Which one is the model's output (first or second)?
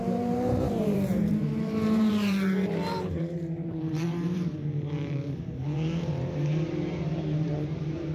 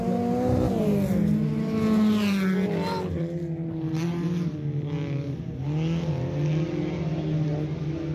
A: first